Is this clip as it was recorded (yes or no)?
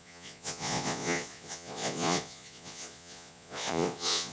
no